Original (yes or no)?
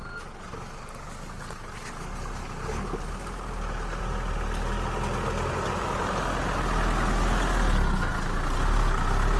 yes